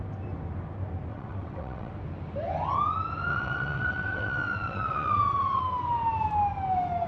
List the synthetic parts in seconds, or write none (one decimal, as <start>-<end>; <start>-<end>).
1.1-1.9; 3.3-5.6